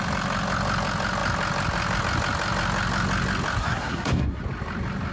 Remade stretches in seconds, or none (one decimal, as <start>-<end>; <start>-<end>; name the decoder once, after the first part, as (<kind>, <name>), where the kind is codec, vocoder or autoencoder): 3.6-4.4 (codec, SNAC)